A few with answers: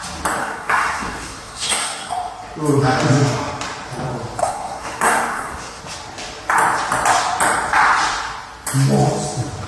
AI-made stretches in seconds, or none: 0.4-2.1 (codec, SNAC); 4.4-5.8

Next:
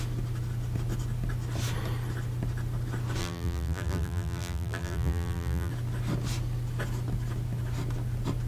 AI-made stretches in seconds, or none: 3.2-5.7 (vocoder, BigVGAN v2)